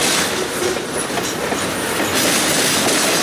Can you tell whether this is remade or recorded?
recorded